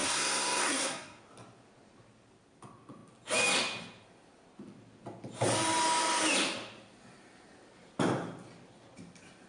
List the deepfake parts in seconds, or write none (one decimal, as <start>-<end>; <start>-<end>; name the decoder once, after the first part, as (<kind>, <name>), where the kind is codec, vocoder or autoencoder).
0.0-1.2 (codec, SNAC)